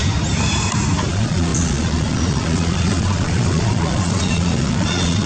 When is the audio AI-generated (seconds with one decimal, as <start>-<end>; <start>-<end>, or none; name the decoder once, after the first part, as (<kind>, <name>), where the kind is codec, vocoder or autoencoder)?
1.1-5.3 (vocoder, Vocos)